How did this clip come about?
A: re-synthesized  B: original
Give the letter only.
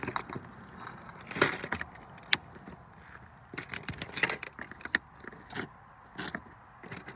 B